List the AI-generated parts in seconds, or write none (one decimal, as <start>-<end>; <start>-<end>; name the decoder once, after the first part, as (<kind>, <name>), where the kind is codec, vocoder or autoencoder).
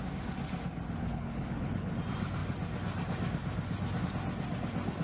1.0-1.9 (codec, HILCodec)